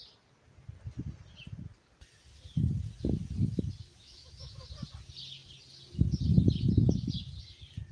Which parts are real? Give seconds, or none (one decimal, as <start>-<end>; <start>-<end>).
0.0-3.9; 4.6-7.9